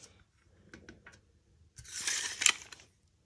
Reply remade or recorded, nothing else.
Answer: recorded